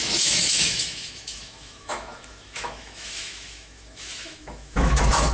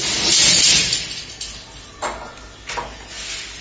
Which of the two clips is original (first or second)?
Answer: second